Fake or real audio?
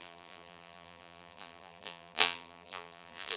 fake